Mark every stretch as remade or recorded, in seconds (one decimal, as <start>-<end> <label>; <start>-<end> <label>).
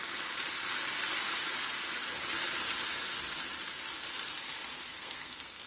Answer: 0.0-4.7 recorded; 4.7-5.7 remade